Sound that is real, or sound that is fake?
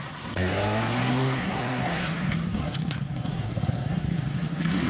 fake